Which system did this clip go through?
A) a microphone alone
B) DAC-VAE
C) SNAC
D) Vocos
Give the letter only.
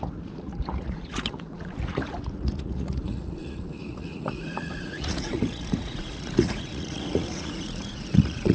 D